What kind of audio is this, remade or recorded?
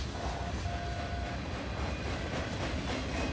recorded